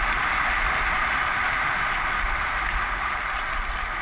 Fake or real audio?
fake